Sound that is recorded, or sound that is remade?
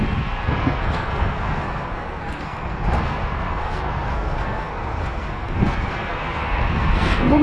remade